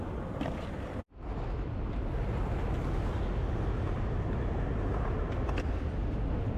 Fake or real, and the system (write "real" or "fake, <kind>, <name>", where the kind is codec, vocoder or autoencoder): real